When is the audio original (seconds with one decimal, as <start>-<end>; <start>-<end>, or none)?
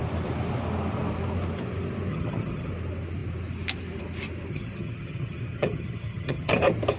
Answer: 0.0-2.1; 2.7-4.5; 6.5-7.0